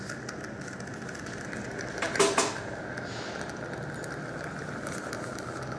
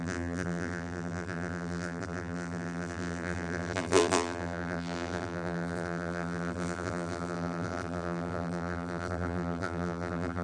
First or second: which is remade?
second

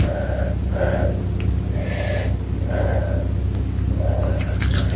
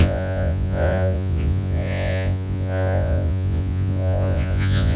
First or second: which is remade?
second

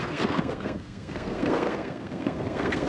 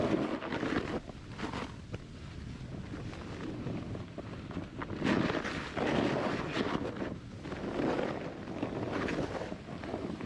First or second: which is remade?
first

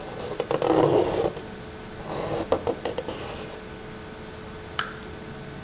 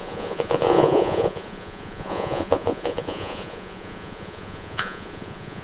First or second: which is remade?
second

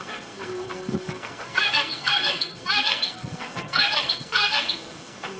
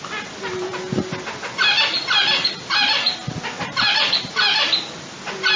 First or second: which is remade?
first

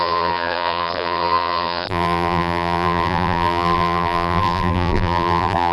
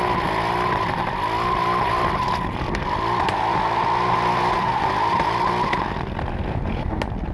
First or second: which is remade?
first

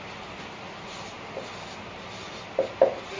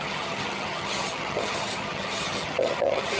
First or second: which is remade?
second